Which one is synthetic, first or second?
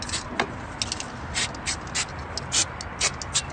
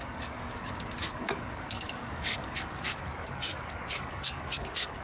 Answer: second